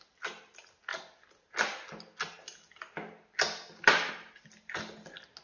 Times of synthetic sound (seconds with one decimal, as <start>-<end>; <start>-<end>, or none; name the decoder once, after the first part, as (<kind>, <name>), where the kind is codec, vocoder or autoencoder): none